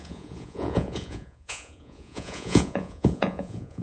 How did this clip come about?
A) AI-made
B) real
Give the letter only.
A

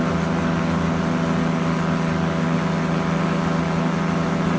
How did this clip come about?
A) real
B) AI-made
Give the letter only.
A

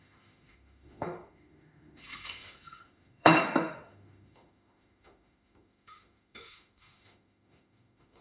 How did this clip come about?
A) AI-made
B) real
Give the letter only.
A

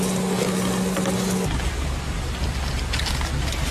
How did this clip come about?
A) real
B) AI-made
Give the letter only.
A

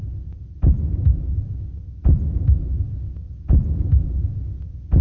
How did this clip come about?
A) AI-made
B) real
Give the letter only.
B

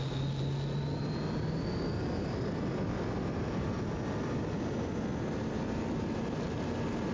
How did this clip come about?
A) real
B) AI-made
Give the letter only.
A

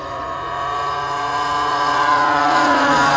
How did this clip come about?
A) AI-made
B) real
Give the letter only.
A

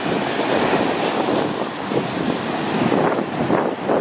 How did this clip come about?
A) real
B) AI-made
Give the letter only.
A